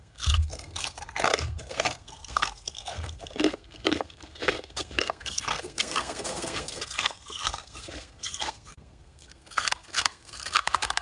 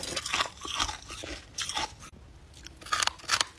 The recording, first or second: second